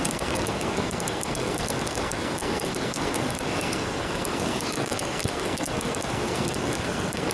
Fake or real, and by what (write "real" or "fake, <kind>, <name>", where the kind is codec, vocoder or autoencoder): fake, codec, SNAC